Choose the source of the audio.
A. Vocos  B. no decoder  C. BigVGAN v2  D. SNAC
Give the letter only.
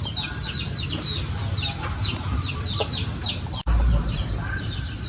C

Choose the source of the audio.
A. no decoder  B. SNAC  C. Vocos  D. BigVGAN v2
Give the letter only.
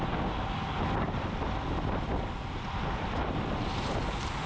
A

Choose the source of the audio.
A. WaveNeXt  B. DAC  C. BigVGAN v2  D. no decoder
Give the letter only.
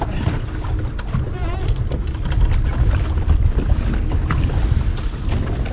D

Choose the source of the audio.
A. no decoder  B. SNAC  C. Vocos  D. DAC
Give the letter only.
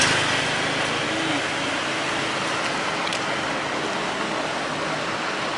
A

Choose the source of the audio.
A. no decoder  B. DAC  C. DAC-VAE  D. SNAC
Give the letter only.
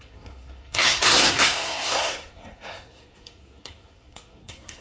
D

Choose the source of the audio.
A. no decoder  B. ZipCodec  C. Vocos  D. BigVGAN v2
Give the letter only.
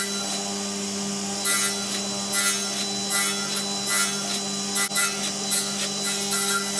A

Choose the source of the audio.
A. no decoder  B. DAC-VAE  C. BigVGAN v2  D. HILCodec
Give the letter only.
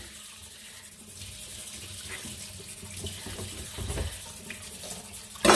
A